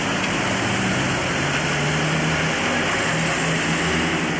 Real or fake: real